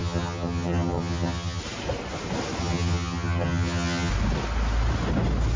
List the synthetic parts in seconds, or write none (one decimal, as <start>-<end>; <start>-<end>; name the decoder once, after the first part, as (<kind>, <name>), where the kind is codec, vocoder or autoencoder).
0.0-1.6 (vocoder, HiFi-GAN); 2.6-4.1